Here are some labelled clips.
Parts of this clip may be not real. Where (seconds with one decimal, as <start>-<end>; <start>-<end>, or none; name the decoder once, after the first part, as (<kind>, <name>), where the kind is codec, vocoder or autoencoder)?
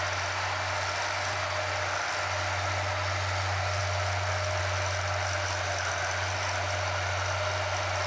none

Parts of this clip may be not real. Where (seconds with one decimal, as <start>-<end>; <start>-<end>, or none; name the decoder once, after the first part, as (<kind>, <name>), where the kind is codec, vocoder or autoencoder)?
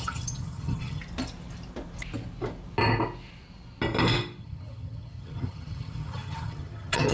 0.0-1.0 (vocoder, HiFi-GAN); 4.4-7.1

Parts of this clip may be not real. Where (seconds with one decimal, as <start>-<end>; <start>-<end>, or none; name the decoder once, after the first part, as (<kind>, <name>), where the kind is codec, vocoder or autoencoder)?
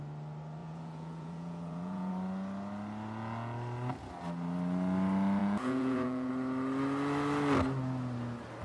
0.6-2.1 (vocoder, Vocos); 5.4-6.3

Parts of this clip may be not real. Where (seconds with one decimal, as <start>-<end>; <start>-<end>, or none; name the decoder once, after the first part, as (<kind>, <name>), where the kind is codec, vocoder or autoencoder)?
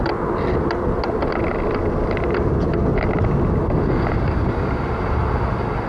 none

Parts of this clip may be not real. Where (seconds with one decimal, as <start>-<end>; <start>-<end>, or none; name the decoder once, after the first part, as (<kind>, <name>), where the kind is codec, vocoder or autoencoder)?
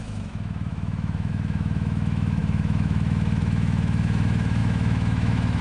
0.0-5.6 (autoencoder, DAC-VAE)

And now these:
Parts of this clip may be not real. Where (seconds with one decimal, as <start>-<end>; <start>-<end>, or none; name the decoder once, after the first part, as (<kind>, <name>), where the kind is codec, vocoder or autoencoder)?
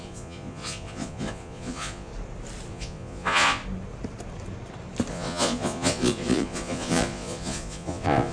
0.0-2.1 (vocoder, Vocos); 2.7-3.6; 5.1-8.3